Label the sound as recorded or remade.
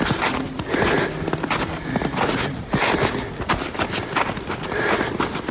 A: recorded